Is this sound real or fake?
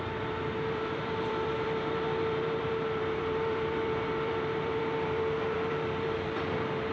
fake